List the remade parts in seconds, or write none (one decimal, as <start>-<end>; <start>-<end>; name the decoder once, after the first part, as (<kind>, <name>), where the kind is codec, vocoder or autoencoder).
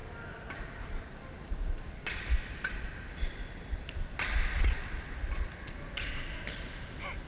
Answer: none